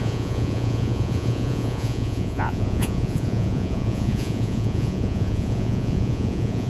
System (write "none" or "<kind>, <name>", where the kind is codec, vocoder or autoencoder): vocoder, Vocos